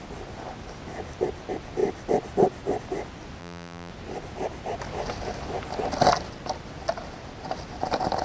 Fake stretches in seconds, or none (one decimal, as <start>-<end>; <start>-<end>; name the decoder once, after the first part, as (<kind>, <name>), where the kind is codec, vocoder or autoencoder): 3.4-3.9 (vocoder, BigVGAN v2)